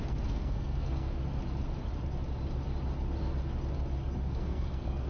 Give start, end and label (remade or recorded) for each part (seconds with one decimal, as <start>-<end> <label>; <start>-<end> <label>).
0.0-1.2 remade; 1.2-4.3 recorded; 4.3-5.1 remade